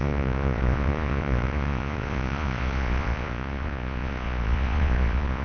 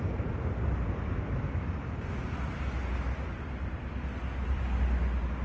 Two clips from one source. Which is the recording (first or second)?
second